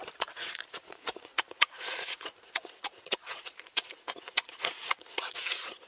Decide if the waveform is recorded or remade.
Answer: remade